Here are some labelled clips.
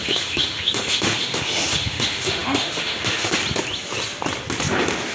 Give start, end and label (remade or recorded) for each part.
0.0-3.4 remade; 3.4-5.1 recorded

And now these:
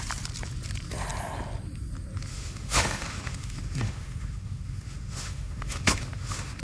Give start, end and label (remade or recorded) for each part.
0.0-2.3 recorded; 2.3-6.6 remade